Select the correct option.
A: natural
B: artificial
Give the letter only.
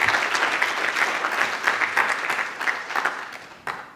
A